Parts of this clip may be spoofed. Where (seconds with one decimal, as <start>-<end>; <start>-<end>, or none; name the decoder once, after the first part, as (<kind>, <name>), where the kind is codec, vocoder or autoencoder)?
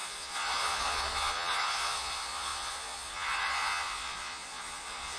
0.0-5.2 (vocoder, Vocos)